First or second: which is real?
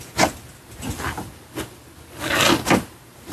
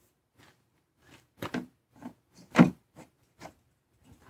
first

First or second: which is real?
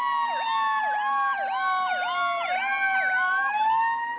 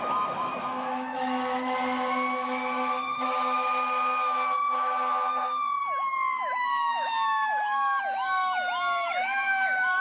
first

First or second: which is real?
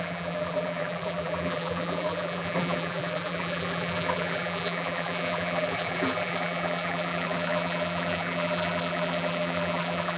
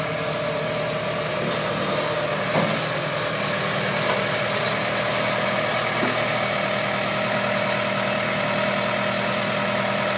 second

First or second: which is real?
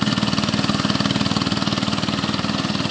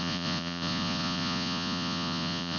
first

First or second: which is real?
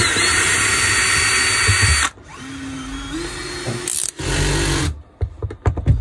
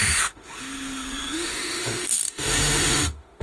first